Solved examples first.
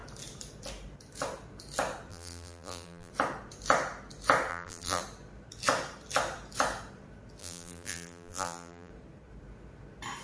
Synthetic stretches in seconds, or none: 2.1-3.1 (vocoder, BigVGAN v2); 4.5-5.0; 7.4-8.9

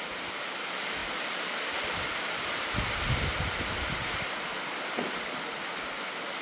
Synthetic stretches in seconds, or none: 1.0-4.8 (vocoder, BigVGAN v2)

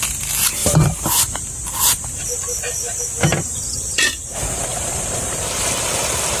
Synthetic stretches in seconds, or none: 0.6-1.5 (vocoder, BigVGAN v2); 3.2-5.7

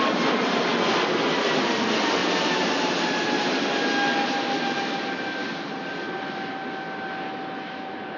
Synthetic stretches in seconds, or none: 2.2-3.4 (vocoder, BigVGAN v2)